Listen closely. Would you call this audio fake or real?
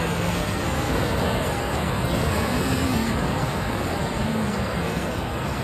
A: fake